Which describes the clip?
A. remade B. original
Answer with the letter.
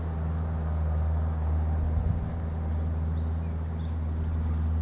B